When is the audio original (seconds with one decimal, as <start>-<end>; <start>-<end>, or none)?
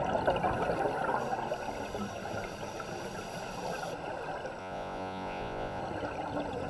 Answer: 0.0-4.6; 5.8-6.7